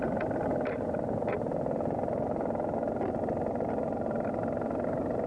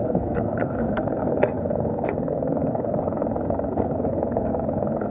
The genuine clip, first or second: first